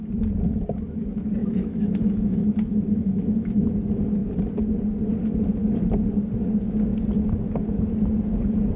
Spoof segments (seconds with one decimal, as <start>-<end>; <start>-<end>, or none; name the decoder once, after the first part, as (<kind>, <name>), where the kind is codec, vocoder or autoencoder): 1.4-3.7 (autoencoder, DAC-VAE)